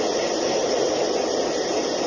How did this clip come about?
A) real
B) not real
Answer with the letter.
A